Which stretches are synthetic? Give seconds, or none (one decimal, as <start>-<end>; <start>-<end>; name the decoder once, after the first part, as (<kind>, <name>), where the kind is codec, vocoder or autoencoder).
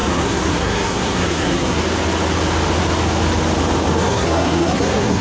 0.0-1.8 (codec, SNAC); 4.0-5.2